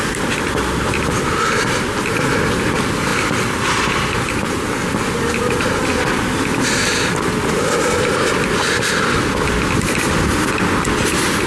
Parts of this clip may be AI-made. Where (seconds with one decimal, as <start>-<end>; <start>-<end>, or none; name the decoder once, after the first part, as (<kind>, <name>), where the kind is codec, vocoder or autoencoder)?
none